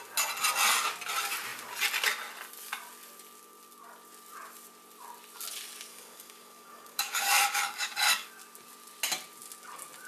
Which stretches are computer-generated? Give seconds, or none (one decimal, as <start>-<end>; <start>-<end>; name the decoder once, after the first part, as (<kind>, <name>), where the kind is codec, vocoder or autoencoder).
5.9-8.3 (codec, DAC)